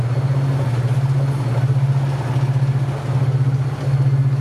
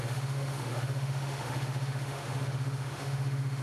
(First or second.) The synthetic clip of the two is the second